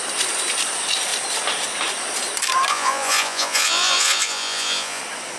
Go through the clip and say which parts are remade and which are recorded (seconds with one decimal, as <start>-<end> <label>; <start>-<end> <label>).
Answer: 0.0-2.7 recorded; 2.7-5.0 remade; 5.0-5.4 recorded